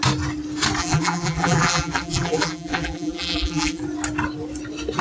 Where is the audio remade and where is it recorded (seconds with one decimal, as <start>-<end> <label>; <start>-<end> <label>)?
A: 0.0-0.8 recorded; 0.8-3.8 remade; 3.8-5.0 recorded